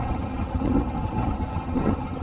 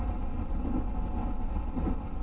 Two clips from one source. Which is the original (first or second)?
second